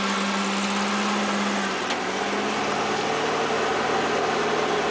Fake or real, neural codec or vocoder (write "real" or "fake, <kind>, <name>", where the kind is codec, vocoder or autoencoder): real